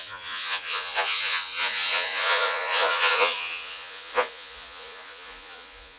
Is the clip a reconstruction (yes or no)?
yes